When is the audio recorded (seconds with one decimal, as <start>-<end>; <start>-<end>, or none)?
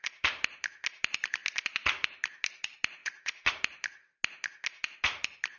0.0-3.0; 3.5-5.6